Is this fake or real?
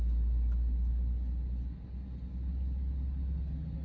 real